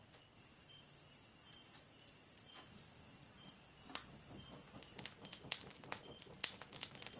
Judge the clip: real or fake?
real